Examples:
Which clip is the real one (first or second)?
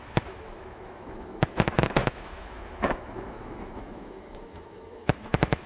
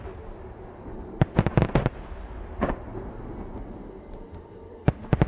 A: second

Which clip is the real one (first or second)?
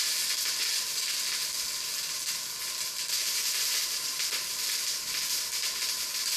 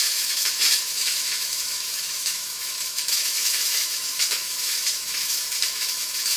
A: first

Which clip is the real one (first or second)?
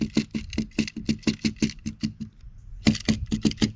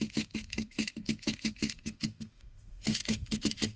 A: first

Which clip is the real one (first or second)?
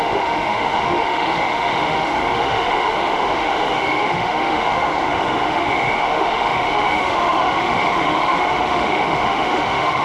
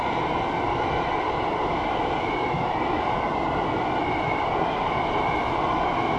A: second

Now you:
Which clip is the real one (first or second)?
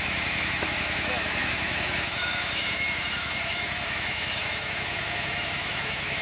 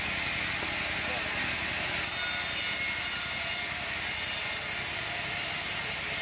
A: second